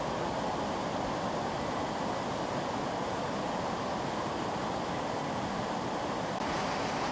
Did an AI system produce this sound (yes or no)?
no